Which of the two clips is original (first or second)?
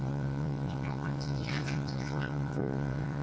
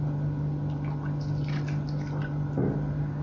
second